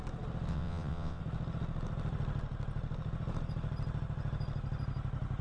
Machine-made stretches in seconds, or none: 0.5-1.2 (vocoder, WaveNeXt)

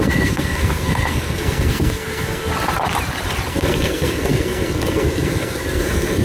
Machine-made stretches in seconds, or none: 0.0-2.5 (codec, SNAC); 3.5-6.2

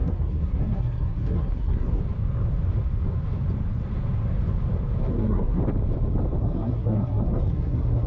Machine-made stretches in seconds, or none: 0.0-2.0 (codec, SNAC); 5.1-5.6; 6.4-8.1

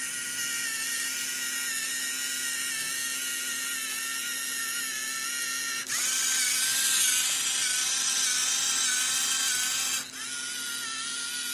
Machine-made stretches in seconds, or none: none

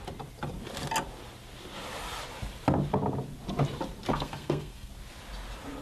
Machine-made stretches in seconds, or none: 4.1-4.9 (codec, SNAC)

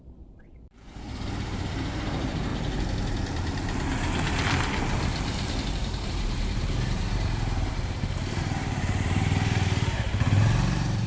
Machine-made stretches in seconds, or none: 0.0-2.5 (vocoder, BigVGAN v2); 6.1-11.1

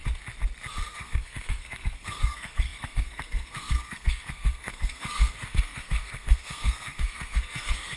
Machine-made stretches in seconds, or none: 0.9-8.0 (codec, SNAC)

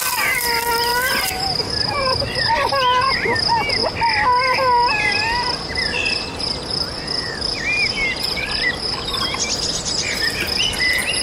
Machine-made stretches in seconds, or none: 0.0-3.8 (vocoder, BigVGAN v2); 5.1-11.2